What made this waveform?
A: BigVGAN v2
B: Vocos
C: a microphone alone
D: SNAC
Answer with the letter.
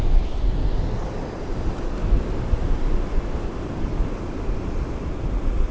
C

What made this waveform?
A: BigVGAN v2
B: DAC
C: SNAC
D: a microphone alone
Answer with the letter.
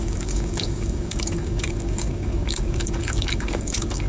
B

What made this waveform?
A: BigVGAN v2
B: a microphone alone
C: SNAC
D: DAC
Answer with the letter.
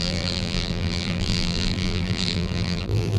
A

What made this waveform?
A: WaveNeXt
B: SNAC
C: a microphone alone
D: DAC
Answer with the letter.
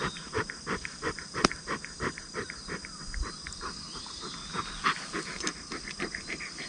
C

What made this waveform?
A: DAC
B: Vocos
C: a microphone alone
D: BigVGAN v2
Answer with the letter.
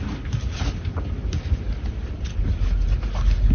C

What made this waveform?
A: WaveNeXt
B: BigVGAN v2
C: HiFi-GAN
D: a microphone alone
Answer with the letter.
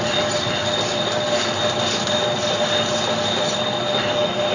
D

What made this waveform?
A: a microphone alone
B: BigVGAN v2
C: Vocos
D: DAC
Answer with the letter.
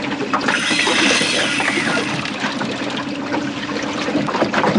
A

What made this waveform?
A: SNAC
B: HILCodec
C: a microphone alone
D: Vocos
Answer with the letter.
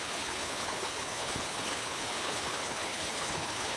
B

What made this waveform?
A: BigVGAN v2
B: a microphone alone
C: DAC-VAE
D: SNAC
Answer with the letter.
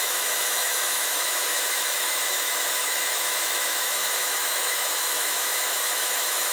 C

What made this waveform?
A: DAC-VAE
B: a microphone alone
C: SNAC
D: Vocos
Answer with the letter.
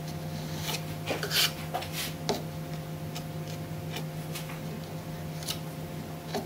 B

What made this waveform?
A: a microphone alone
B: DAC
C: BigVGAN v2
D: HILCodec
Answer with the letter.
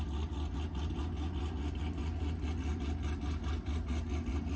A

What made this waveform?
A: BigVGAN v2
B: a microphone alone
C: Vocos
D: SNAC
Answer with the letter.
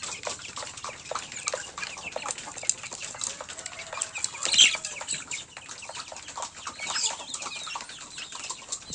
B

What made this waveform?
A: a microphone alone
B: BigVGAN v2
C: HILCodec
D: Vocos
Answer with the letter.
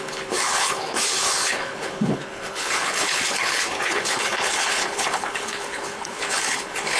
C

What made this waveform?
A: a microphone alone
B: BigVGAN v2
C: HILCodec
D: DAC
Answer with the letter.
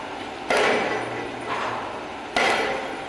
A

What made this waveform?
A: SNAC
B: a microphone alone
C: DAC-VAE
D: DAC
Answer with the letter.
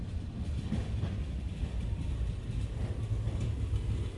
B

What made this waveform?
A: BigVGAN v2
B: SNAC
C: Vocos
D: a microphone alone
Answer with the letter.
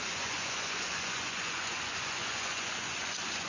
C